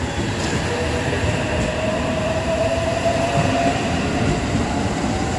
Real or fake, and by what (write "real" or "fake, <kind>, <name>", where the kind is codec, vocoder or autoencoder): fake, vocoder, BigVGAN v2